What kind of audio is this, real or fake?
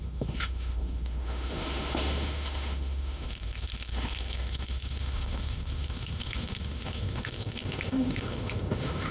fake